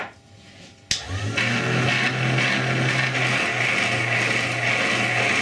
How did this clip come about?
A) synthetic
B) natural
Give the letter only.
B